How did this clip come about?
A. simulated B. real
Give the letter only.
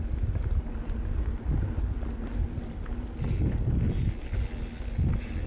B